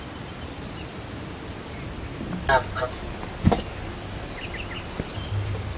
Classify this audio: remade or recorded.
recorded